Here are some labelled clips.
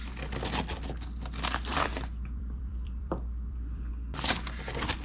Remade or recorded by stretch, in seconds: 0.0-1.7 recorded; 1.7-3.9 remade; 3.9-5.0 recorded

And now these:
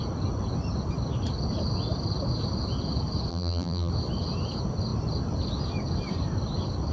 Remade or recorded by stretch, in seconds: 0.0-3.3 recorded; 3.3-3.9 remade; 3.9-6.9 recorded

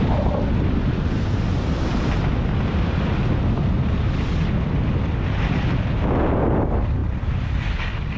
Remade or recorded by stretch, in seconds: 0.0-8.2 recorded